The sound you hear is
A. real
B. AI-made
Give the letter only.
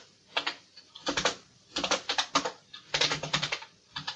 A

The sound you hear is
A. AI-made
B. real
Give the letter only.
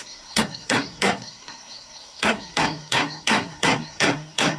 A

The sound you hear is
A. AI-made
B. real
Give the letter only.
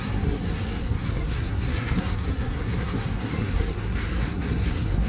A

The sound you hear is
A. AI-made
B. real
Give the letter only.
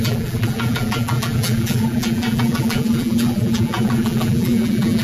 A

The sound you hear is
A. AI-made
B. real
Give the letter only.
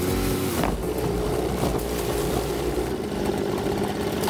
B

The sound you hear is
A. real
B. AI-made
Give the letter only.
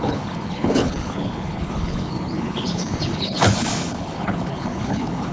B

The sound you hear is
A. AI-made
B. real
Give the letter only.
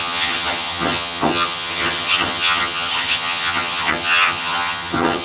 A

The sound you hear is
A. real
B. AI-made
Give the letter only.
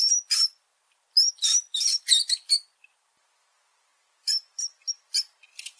A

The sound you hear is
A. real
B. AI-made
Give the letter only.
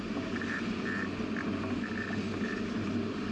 A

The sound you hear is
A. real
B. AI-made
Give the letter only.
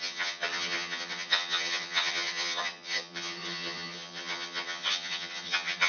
B